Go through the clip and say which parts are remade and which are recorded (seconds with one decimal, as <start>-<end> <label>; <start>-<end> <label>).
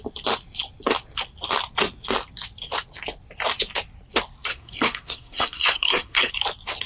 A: 0.0-4.5 recorded; 4.5-6.3 remade; 6.3-6.9 recorded